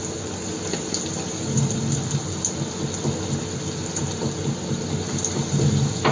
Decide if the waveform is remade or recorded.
recorded